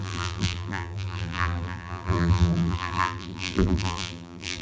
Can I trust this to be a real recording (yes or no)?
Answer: no